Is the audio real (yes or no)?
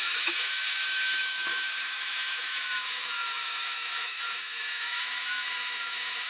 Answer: no